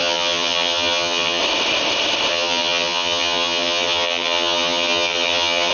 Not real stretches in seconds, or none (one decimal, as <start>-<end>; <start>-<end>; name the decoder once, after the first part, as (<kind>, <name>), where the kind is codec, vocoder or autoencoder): 0.0-1.4 (vocoder, HiFi-GAN); 2.3-5.7

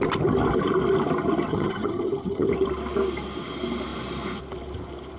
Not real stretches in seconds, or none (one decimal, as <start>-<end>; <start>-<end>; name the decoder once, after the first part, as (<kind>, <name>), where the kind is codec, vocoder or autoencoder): 1.5-2.5 (vocoder, HiFi-GAN)